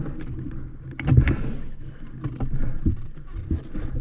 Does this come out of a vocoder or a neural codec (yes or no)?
no